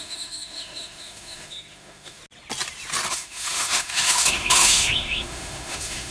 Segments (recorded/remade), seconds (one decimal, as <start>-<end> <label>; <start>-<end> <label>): 0.0-2.2 remade; 2.2-3.1 recorded; 3.1-6.1 remade

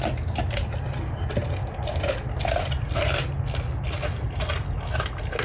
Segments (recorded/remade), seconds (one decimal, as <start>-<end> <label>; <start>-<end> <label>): 0.0-5.4 recorded

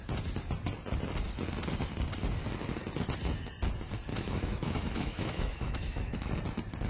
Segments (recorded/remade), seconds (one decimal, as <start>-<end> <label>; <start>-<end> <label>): 0.0-4.1 recorded; 4.1-6.3 remade; 6.3-6.9 recorded

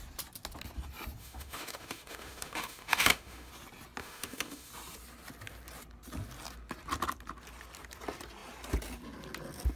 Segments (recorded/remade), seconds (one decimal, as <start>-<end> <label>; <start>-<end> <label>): 0.0-1.2 recorded; 1.2-3.5 remade; 3.5-4.0 recorded; 4.0-4.7 remade; 4.7-9.8 recorded

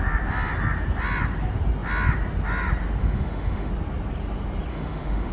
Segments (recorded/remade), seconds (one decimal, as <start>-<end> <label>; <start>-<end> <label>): 0.0-3.0 recorded; 3.0-3.7 remade; 3.7-4.7 recorded; 4.7-5.3 remade

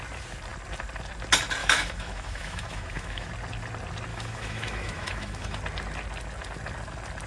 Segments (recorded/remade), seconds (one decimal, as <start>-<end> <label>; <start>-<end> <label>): 0.0-1.6 recorded; 1.6-3.3 remade; 3.3-4.1 recorded; 4.1-5.6 remade; 5.6-7.3 recorded